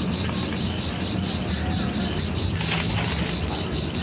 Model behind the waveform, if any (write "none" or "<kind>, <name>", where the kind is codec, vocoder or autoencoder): none